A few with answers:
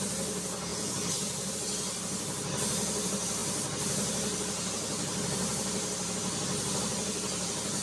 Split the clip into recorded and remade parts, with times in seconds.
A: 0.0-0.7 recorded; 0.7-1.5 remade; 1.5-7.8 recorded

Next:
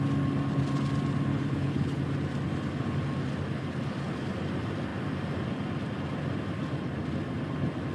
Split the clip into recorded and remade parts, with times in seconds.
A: 0.0-1.3 recorded; 1.3-2.0 remade; 2.0-7.9 recorded

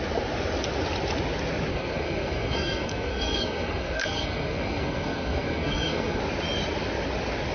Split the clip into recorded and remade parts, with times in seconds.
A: 0.0-1.7 recorded; 1.7-6.2 remade; 6.2-7.5 recorded

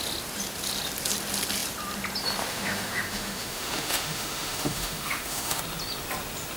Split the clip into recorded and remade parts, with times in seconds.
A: 0.0-2.5 recorded; 2.5-5.6 remade; 5.6-6.6 recorded

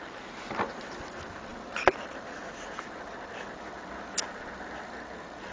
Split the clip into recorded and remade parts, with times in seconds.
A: 0.0-5.5 recorded

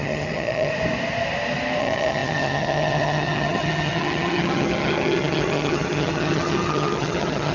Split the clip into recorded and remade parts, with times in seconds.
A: 0.0-0.7 remade; 0.7-1.8 recorded; 1.8-7.5 remade

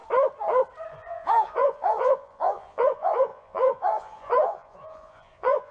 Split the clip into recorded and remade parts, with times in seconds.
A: 0.0-0.9 recorded; 0.9-5.7 remade